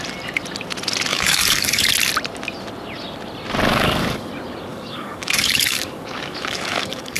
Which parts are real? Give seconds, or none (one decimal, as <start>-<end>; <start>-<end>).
0.0-1.1; 1.9-3.7; 4.3-4.7